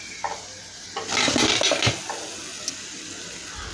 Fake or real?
real